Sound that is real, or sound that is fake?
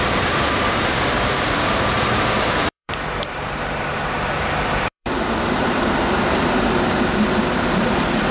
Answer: fake